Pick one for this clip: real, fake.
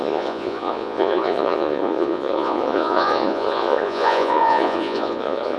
fake